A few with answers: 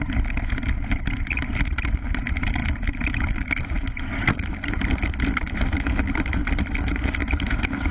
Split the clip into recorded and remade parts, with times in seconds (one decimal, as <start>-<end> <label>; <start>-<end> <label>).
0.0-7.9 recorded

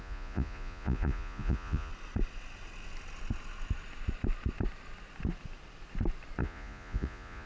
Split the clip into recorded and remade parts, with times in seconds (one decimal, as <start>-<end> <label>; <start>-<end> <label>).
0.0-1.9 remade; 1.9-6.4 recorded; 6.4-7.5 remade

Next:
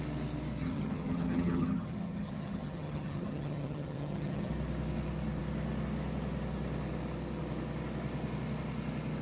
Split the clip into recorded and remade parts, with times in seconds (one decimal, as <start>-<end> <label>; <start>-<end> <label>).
0.0-0.6 recorded; 0.6-4.5 remade; 4.5-9.2 recorded

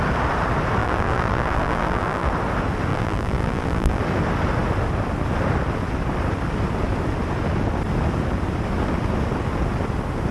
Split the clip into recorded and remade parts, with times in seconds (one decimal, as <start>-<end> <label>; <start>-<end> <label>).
0.0-0.8 recorded; 0.8-2.3 remade; 2.3-2.9 recorded; 2.9-4.0 remade; 4.0-10.3 recorded

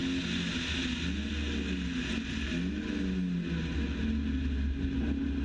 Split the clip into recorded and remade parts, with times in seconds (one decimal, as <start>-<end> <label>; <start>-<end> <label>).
0.0-5.4 recorded

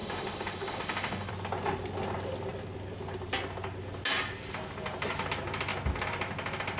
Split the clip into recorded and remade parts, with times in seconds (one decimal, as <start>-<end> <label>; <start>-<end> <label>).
0.0-1.3 remade; 1.3-6.8 recorded